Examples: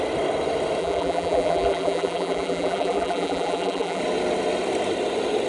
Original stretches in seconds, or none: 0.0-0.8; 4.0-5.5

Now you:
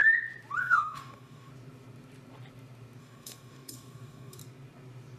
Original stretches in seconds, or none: 0.0-0.6; 1.5-3.0; 4.4-5.2

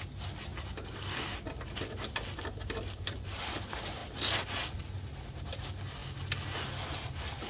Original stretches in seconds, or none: 0.0-7.5

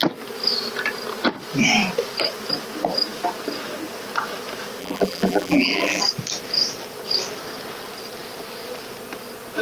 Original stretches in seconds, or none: 0.0-4.8; 6.0-9.6

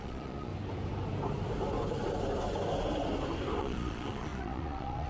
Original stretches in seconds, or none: 0.5-3.6

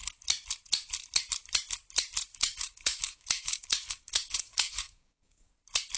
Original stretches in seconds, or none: 0.0-2.3; 5.5-6.0

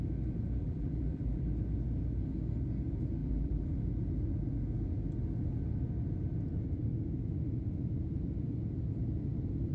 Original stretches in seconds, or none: 0.0-0.6; 1.5-3.2; 3.7-9.7